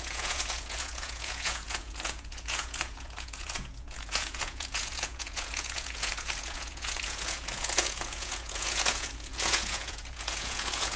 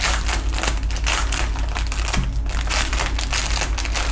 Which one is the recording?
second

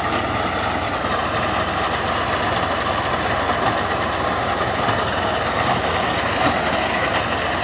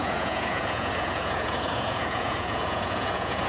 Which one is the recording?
first